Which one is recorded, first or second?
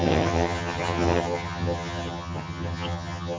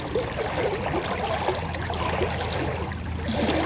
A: second